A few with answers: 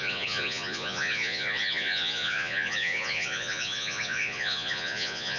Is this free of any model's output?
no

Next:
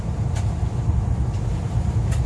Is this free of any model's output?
yes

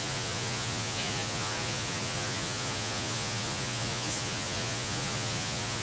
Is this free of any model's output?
no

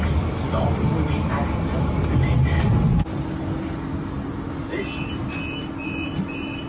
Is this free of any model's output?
yes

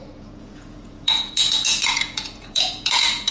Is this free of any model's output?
no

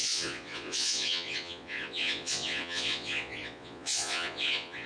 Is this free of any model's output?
no